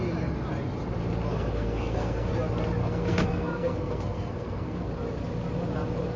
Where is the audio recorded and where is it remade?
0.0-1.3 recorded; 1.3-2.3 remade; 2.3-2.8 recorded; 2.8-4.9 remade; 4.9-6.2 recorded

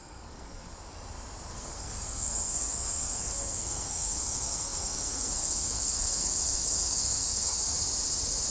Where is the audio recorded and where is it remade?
0.0-0.7 remade; 0.7-1.5 recorded; 1.5-7.6 remade; 7.6-8.5 recorded

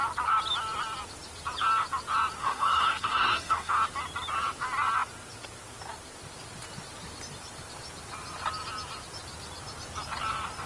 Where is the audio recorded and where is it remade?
0.0-2.4 recorded; 2.4-3.7 remade; 3.7-10.7 recorded

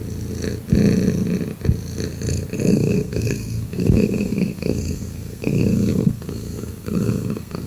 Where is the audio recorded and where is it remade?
0.0-2.7 recorded; 2.7-7.7 remade

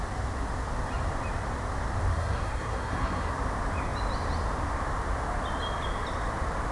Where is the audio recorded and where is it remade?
0.0-2.1 recorded; 2.1-3.3 remade; 3.3-6.7 recorded